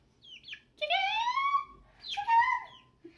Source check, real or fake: real